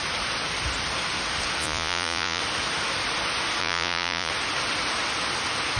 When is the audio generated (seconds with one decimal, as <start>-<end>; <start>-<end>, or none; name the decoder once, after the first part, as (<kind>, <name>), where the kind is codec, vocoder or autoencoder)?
1.6-2.4 (vocoder, Vocos); 3.6-4.3